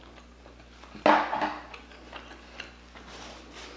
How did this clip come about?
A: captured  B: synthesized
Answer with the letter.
A